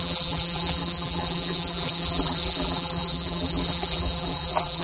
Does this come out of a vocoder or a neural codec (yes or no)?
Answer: yes